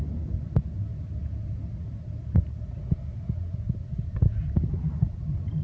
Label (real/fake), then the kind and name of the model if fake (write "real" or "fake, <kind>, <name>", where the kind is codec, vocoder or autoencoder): real